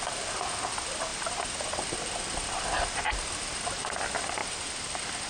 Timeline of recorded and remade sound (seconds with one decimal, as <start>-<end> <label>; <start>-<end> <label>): 0.0-1.1 recorded; 1.1-2.6 remade; 2.6-4.4 recorded; 4.4-5.3 remade